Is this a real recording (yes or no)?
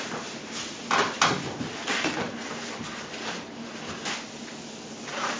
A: yes